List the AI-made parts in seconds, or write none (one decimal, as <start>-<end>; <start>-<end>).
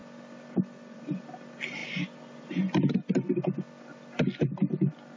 none